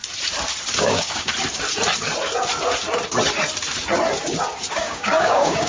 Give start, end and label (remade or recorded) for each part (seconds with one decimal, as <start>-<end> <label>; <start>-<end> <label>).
0.0-0.8 recorded; 0.8-1.3 remade; 1.3-4.7 recorded; 4.7-5.7 remade

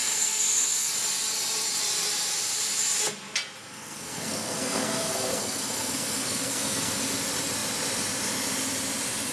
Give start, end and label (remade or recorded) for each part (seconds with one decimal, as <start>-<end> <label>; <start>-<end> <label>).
0.0-0.9 remade; 0.9-3.6 recorded; 3.6-7.0 remade; 7.0-9.3 recorded

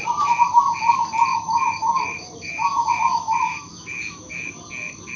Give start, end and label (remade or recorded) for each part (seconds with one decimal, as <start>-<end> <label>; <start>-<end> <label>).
0.0-1.3 recorded; 1.3-4.4 remade; 4.4-5.2 recorded

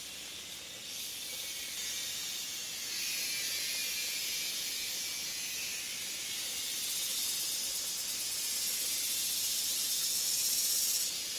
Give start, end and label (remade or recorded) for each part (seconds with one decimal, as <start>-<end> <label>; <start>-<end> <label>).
0.0-7.1 recorded; 7.1-8.0 remade; 8.0-11.4 recorded

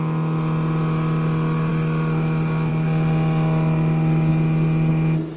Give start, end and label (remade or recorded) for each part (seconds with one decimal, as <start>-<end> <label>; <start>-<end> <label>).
0.0-5.4 recorded